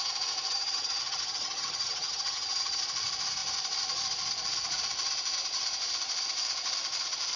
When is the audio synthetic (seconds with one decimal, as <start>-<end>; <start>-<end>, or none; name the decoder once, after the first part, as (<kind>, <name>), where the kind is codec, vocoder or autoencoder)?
0.5-2.8 (vocoder, HiFi-GAN)